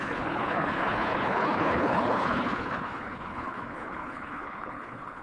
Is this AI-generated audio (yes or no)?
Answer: yes